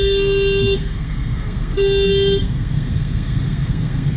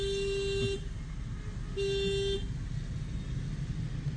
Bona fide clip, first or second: second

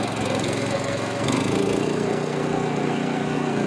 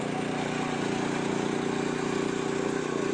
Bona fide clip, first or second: second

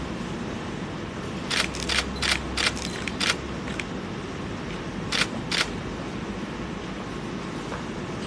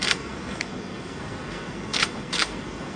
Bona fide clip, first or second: first